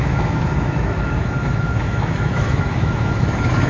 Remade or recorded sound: remade